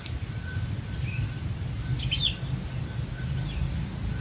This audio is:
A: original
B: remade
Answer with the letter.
A